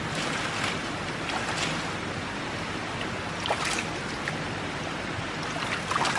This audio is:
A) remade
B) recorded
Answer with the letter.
B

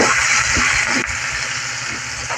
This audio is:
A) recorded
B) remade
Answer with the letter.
A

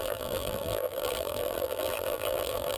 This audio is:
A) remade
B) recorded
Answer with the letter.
A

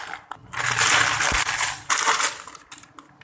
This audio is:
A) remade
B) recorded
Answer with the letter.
B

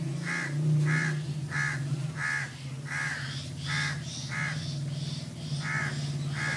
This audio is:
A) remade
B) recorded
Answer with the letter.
B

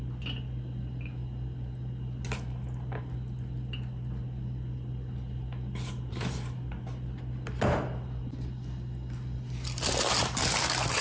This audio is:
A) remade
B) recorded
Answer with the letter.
B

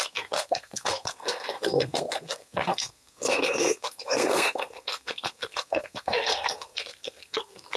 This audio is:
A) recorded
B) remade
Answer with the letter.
B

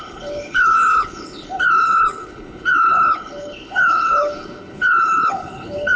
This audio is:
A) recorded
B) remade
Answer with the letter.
B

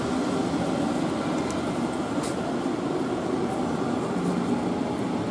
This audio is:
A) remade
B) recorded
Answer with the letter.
B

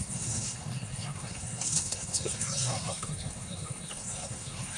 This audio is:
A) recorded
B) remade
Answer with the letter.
B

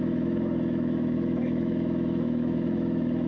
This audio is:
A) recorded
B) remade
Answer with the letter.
B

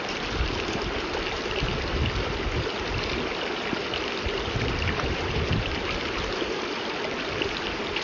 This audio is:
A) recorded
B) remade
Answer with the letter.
A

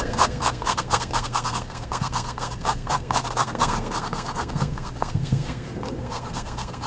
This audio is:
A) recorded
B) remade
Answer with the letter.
B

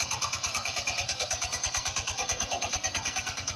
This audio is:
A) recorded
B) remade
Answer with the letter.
B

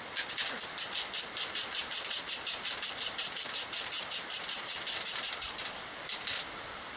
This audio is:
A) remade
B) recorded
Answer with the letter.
B